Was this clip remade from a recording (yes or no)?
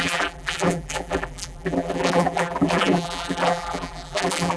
yes